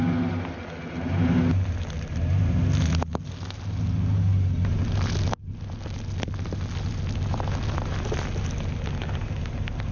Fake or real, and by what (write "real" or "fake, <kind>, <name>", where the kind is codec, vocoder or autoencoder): real